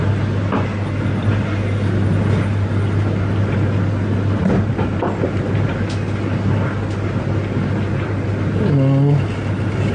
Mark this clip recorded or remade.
recorded